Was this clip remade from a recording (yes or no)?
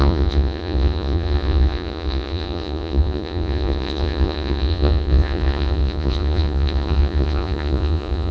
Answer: yes